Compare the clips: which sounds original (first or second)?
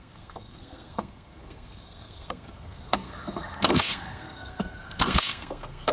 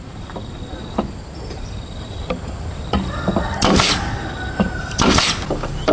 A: second